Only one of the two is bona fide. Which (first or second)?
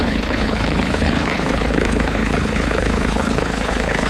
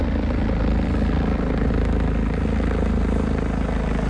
second